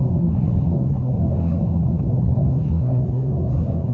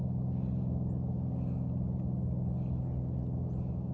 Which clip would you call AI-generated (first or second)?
first